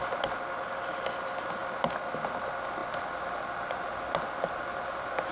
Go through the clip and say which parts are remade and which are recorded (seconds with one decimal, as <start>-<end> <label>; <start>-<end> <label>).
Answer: 0.0-5.3 recorded